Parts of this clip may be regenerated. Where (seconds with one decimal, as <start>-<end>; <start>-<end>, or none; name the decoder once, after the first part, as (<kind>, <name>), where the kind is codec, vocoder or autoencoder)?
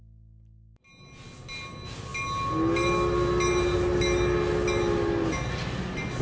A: none